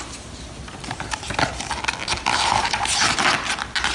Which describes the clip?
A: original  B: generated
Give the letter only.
A